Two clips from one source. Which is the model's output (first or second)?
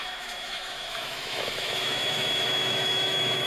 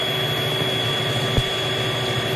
first